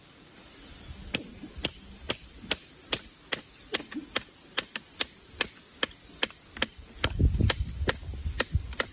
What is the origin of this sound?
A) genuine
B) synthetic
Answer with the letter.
A